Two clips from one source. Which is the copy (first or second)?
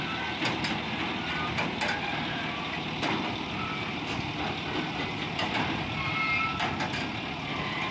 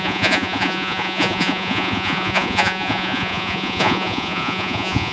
second